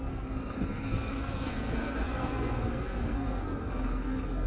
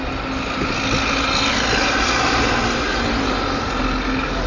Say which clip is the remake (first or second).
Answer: first